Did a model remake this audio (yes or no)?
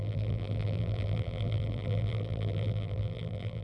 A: yes